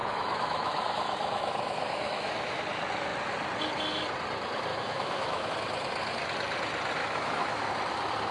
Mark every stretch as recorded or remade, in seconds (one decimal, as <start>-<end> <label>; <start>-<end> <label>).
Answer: 0.0-2.6 remade; 2.6-4.7 recorded; 4.7-5.5 remade; 5.5-7.0 recorded; 7.0-7.7 remade; 7.7-8.3 recorded